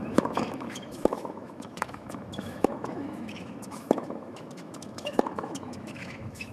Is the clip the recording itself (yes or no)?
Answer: no